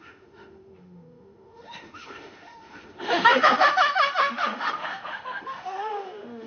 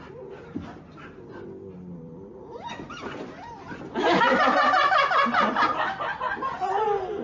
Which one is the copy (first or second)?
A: first